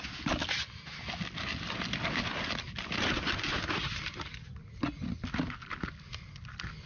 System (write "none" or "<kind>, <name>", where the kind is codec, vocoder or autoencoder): none